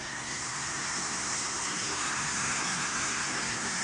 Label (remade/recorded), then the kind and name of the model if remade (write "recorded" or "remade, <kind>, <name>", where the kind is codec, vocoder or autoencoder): remade, codec, SNAC